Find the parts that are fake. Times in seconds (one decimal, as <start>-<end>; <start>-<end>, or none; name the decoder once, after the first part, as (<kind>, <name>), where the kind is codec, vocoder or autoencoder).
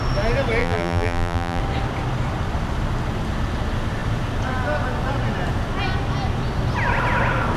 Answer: 0.6-1.6 (vocoder, BigVGAN v2)